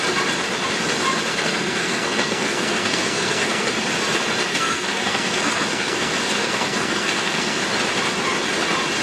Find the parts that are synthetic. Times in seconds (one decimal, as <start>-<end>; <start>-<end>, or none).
1.3-3.7; 4.5-7.6